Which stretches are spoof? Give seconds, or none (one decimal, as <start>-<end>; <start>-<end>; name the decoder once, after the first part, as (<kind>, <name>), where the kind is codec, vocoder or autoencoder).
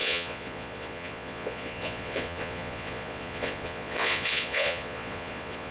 0.0-5.7 (vocoder, Vocos)